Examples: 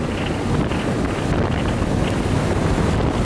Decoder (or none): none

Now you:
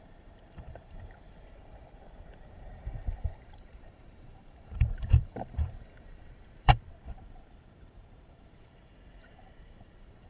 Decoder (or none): vocoder, BigVGAN v2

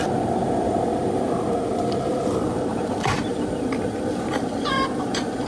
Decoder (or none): vocoder, BigVGAN v2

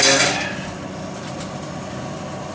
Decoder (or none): none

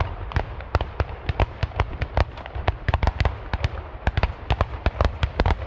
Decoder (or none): none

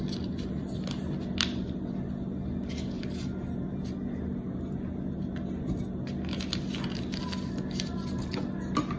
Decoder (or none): none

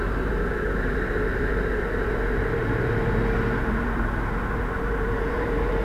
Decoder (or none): vocoder, BigVGAN v2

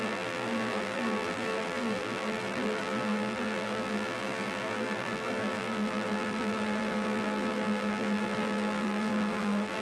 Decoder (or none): vocoder, BigVGAN v2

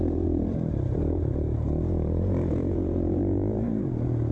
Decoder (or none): vocoder, BigVGAN v2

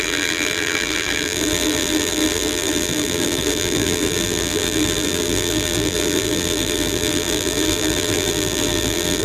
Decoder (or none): vocoder, BigVGAN v2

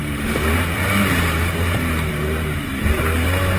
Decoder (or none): vocoder, BigVGAN v2